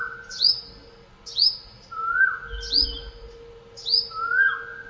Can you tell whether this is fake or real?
real